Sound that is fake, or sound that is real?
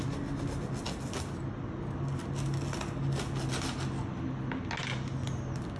real